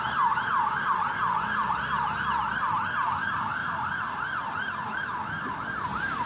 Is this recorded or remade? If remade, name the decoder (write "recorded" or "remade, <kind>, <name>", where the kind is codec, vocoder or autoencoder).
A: recorded